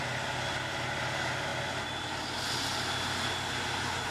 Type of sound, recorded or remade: recorded